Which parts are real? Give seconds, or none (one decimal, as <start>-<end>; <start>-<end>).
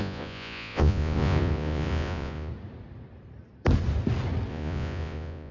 2.5-4.5